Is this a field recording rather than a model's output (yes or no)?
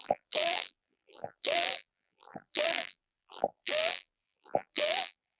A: no